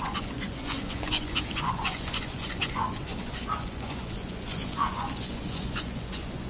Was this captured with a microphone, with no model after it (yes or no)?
no